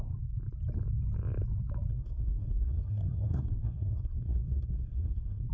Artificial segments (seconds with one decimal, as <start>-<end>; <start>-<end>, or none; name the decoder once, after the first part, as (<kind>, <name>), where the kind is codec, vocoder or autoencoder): 1.9-5.5 (codec, SNAC)